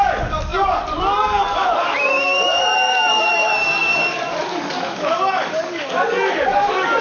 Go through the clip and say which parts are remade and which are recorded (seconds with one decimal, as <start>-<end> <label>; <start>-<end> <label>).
0.0-7.0 remade